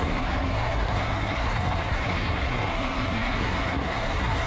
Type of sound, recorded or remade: remade